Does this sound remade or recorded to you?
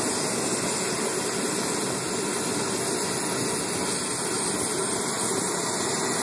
recorded